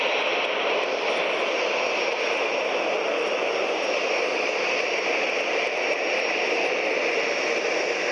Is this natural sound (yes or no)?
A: yes